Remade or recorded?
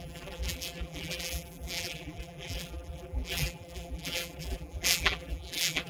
remade